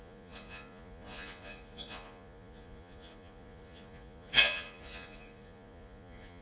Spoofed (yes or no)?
yes